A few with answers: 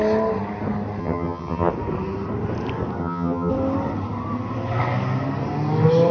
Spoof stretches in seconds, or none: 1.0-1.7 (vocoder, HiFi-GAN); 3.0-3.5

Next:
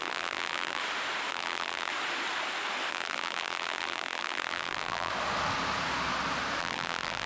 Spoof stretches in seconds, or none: 0.0-0.8 (vocoder, BigVGAN v2); 1.3-1.9; 2.9-5.1; 6.6-7.3

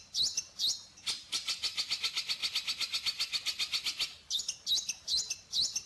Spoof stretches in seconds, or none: none

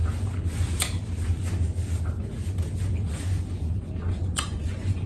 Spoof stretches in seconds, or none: 3.1-5.1 (vocoder, Vocos)

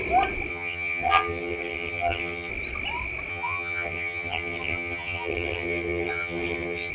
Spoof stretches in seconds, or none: 0.5-2.5 (vocoder, HiFi-GAN); 3.3-6.9